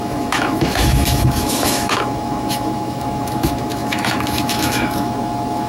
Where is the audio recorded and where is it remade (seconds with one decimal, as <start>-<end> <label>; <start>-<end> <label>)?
0.0-5.7 remade